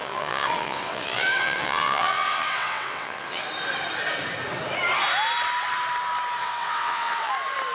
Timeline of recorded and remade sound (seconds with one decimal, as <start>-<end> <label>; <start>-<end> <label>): 0.0-3.4 remade; 3.4-6.4 recorded; 6.4-7.3 remade; 7.3-7.7 recorded